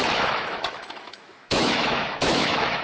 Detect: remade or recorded remade